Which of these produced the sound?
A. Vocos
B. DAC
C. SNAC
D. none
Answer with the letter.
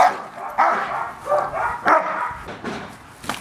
D